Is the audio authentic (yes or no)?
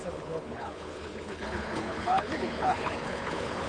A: no